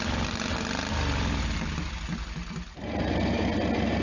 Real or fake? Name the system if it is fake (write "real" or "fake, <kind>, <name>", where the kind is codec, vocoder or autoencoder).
real